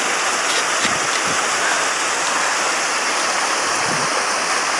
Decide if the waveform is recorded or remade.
recorded